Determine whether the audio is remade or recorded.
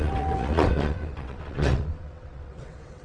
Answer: remade